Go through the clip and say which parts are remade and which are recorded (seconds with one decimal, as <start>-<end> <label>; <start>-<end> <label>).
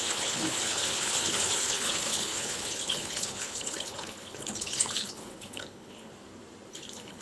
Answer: 0.0-6.1 remade; 6.1-6.7 recorded; 6.7-7.2 remade